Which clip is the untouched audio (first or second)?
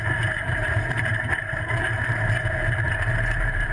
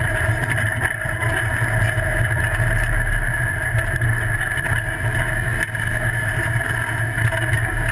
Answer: second